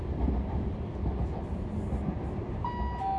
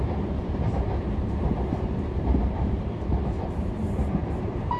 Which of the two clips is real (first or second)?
first